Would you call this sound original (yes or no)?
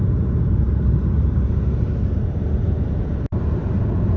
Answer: no